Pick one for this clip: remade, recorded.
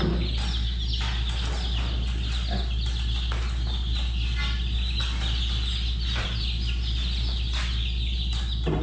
recorded